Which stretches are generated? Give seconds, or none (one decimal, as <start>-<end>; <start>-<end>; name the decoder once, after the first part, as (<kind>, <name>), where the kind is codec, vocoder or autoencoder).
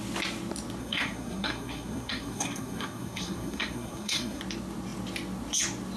0.8-4.4 (codec, SNAC)